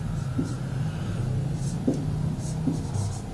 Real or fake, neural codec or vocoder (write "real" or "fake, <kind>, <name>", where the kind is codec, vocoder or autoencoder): real